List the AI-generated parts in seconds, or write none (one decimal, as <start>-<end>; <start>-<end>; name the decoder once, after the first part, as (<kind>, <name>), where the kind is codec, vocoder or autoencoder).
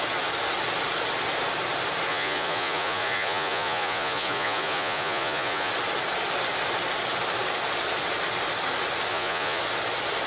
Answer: 2.1-5.7 (vocoder, Vocos); 9.1-9.6